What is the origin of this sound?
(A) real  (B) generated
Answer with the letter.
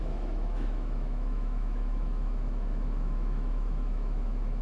B